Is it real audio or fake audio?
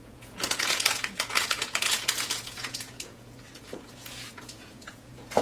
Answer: fake